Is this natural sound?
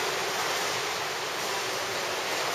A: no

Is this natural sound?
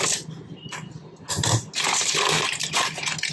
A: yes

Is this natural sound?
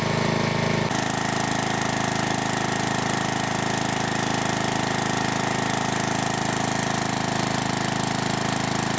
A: yes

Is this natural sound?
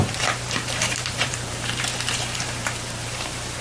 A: no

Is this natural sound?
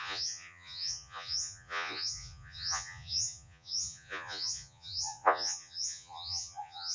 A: no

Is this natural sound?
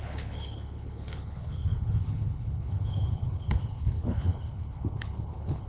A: no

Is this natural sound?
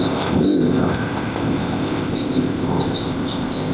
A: no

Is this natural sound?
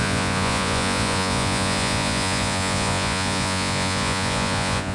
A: no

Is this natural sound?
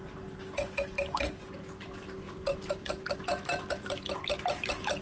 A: yes